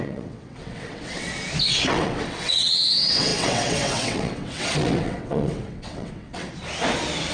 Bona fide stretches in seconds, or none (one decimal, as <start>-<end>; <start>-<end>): 1.3-1.9; 6.5-7.3